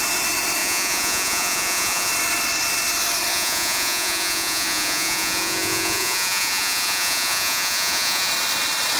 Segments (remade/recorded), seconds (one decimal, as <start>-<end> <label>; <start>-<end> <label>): 0.0-0.6 recorded; 0.6-2.1 remade; 2.1-3.3 recorded; 3.3-8.3 remade; 8.3-9.0 recorded